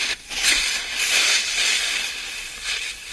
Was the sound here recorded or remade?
recorded